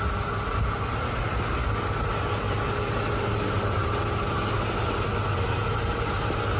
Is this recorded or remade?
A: recorded